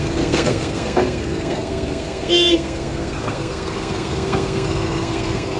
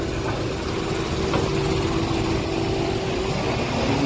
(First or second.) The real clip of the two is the second